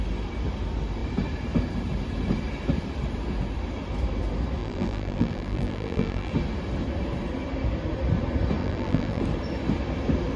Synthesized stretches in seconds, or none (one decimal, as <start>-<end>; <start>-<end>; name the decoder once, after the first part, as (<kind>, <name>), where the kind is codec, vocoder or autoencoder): 4.6-6.3 (vocoder, BigVGAN v2); 8.6-9.2